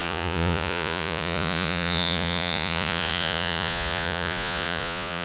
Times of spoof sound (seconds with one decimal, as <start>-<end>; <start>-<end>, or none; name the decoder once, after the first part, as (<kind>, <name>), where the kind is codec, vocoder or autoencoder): 0.0-5.2 (vocoder, Vocos)